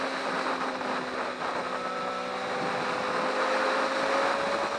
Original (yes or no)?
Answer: yes